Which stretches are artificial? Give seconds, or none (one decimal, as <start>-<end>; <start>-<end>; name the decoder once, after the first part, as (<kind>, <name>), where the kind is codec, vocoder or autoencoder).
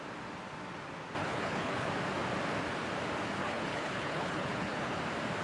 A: 1.2-1.9 (codec, HILCodec); 3.4-5.0